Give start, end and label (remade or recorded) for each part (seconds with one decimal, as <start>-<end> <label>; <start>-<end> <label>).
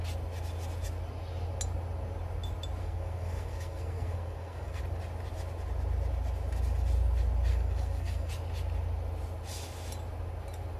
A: 0.0-2.8 recorded; 2.8-4.8 remade; 4.8-7.5 recorded; 7.5-8.3 remade; 8.3-10.8 recorded